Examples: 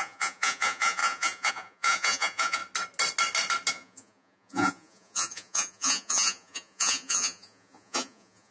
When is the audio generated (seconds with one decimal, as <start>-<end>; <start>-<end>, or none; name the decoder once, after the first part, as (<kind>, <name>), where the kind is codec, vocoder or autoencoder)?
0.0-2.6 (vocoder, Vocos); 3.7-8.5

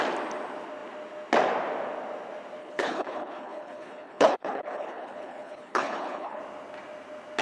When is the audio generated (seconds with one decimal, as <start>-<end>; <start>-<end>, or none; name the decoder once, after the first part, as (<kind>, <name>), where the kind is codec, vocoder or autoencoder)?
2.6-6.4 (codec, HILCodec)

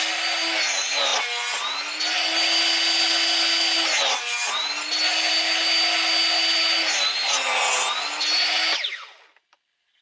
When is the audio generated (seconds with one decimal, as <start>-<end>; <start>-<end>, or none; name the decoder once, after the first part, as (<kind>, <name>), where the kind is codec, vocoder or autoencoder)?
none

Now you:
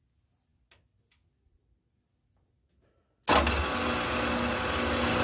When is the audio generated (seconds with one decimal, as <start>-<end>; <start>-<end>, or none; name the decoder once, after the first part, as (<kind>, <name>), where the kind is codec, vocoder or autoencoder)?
none

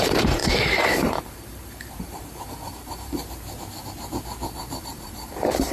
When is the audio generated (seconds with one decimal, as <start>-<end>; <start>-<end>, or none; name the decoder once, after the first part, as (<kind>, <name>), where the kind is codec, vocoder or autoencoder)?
0.0-3.2 (vocoder, BigVGAN v2); 4.5-5.7

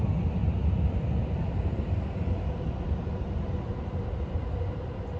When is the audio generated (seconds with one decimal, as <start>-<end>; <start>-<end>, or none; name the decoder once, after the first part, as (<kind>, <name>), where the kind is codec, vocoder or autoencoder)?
none

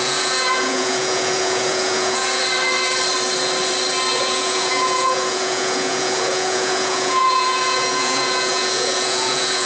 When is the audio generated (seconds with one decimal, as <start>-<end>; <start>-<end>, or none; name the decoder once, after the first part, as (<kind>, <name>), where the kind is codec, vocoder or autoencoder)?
0.0-2.4 (vocoder, Vocos); 4.2-9.7